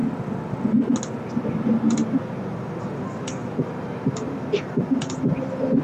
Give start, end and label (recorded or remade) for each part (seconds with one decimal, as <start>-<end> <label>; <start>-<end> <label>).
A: 0.0-1.5 recorded; 1.5-5.8 remade